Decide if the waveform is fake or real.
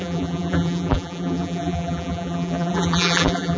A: fake